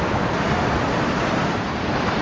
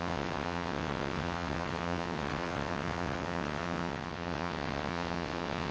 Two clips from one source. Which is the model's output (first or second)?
second